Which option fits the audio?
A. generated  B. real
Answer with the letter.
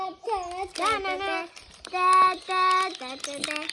B